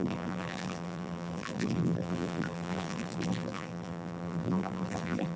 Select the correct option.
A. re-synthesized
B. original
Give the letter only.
A